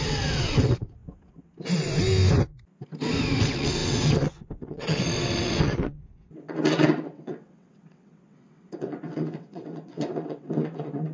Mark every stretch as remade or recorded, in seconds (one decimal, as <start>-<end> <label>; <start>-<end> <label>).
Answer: 0.0-1.0 remade; 1.0-3.4 recorded; 3.4-11.1 remade